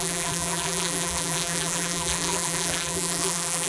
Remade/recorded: remade